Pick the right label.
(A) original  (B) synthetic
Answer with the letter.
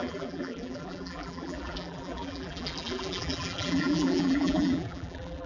B